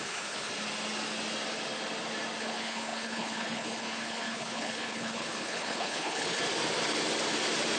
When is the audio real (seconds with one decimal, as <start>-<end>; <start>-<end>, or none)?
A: 0.5-2.4; 6.4-7.8